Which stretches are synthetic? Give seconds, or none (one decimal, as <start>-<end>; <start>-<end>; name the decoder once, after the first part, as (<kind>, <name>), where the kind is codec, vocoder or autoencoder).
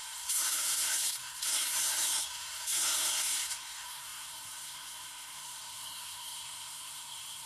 0.0-7.5 (codec, SNAC)